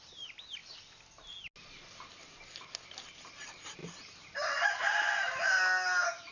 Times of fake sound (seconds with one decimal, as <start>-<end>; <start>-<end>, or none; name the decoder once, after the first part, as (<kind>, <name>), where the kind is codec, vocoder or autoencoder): 0.0-0.6 (vocoder, BigVGAN v2); 3.3-6.3